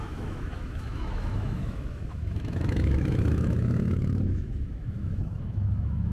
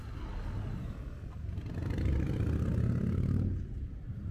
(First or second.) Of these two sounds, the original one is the second